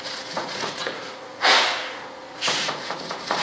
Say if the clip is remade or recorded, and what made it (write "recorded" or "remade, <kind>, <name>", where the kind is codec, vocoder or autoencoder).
remade, vocoder, Vocos